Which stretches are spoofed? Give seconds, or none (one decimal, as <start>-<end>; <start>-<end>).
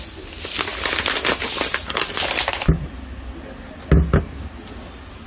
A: none